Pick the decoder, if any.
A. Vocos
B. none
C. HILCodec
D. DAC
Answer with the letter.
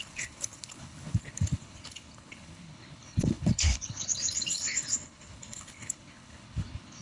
C